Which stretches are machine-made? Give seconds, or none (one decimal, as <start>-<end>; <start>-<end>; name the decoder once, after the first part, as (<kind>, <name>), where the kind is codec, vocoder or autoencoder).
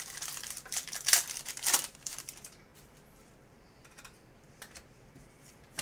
0.0-5.8 (vocoder, BigVGAN v2)